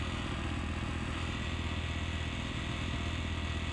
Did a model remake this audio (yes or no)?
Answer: no